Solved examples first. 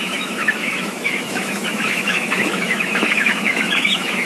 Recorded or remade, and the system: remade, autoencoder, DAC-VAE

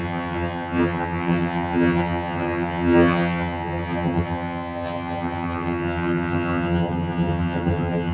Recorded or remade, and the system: remade, vocoder, HiFi-GAN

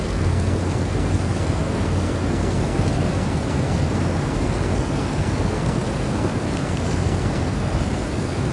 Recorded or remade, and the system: remade, codec, SNAC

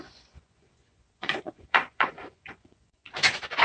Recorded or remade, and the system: remade, vocoder, Vocos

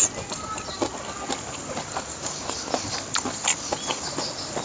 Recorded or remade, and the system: recorded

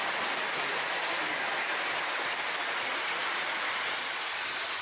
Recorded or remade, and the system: recorded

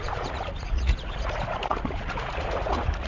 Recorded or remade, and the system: remade, vocoder, Vocos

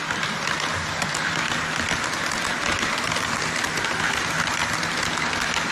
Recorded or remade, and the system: recorded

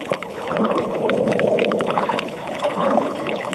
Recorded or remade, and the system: remade, codec, HILCodec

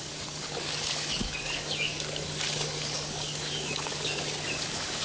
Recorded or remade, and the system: remade, codec, DAC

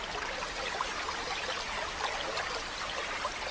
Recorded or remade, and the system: recorded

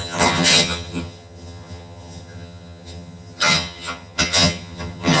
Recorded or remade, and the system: remade, vocoder, HiFi-GAN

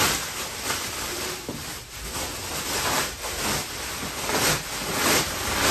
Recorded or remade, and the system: recorded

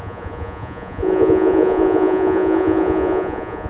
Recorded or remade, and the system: remade, vocoder, Vocos